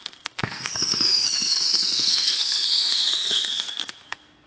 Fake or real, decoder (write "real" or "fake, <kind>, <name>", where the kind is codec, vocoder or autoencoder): fake, codec, SNAC